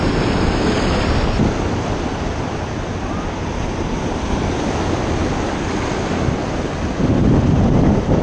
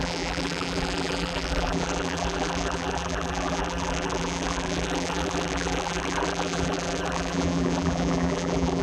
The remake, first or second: second